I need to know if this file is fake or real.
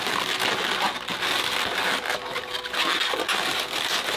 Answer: real